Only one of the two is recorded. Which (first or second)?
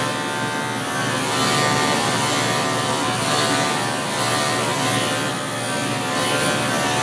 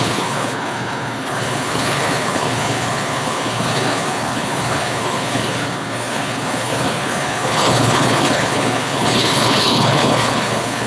first